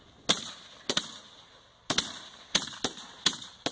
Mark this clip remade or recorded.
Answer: recorded